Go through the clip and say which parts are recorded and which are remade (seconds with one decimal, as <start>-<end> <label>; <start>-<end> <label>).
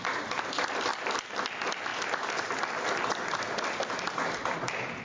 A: 0.0-5.0 recorded